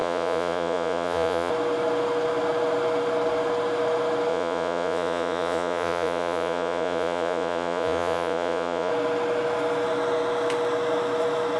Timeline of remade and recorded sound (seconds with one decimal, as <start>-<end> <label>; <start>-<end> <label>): 0.0-1.5 remade; 1.5-4.3 recorded; 4.3-8.9 remade; 8.9-11.6 recorded